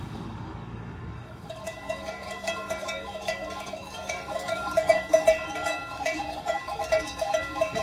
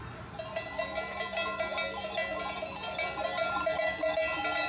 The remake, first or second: first